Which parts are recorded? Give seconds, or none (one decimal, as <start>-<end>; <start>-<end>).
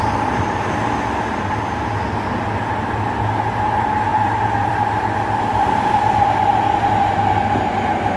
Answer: 0.0-4.1; 6.2-8.2